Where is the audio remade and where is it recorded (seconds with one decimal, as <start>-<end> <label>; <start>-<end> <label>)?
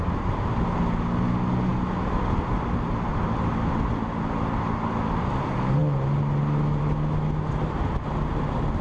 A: 0.0-8.8 recorded